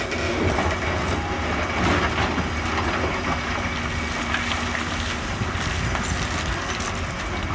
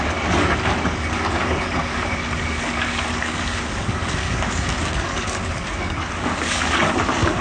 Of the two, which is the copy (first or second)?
second